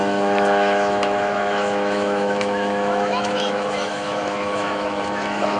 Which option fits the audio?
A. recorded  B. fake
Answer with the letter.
B